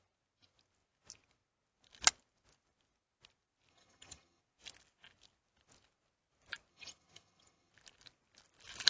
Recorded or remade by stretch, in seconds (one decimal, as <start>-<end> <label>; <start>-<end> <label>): 0.0-3.7 recorded; 3.7-4.4 remade; 4.4-6.7 recorded; 6.7-7.7 remade; 7.7-8.9 recorded